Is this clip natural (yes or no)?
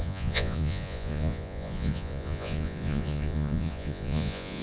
no